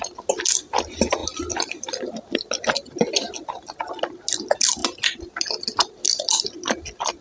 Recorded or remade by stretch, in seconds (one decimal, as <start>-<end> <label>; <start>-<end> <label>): 0.0-7.2 recorded